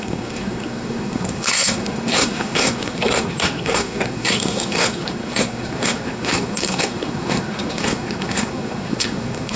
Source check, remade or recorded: remade